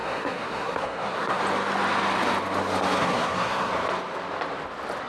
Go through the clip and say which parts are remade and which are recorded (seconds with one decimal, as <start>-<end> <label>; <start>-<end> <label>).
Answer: 0.0-1.4 remade; 1.4-3.0 recorded; 3.0-3.7 remade; 3.7-5.1 recorded